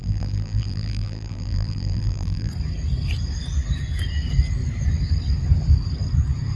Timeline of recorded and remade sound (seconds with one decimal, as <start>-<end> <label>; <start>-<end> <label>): 0.0-2.5 remade; 2.5-6.6 recorded